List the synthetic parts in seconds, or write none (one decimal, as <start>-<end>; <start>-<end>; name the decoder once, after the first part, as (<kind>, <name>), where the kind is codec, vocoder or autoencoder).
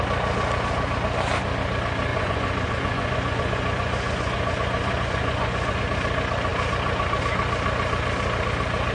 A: 2.1-5.8 (vocoder, Vocos)